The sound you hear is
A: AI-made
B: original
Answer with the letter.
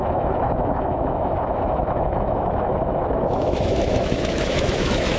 A